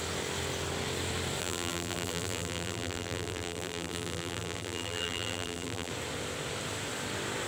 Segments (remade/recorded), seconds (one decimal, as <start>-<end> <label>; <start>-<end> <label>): 0.0-1.4 recorded; 1.4-5.9 remade; 5.9-7.5 recorded